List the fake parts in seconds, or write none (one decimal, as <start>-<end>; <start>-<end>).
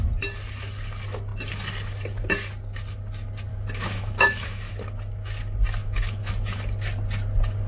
3.5-4.7; 5.8-6.3